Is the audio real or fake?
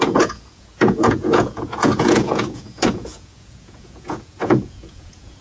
fake